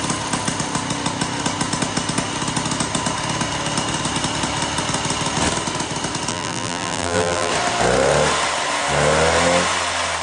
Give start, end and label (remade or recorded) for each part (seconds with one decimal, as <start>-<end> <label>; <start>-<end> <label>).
0.0-6.3 recorded; 6.3-7.5 remade; 7.5-10.2 recorded